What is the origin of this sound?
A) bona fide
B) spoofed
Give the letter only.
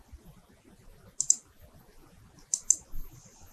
A